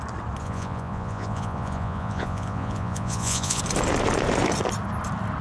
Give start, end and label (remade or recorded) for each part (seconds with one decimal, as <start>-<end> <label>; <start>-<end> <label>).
0.0-0.4 recorded; 0.4-3.6 remade; 3.6-5.4 recorded